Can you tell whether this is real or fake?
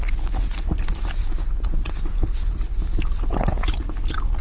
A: real